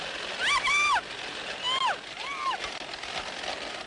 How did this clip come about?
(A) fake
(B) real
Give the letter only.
B